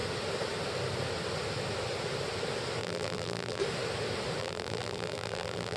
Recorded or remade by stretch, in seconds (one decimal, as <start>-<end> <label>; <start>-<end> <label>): 0.0-2.8 recorded; 2.8-3.6 remade; 3.6-4.4 recorded; 4.4-5.8 remade